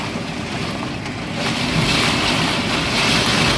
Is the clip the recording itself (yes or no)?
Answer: yes